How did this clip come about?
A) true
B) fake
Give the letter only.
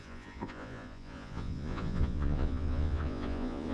B